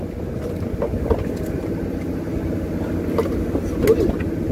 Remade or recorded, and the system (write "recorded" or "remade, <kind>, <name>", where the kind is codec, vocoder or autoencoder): recorded